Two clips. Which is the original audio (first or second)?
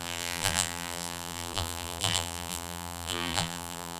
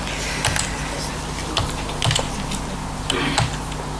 second